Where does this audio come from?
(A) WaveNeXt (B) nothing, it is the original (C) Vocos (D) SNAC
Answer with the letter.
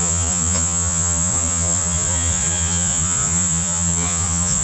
C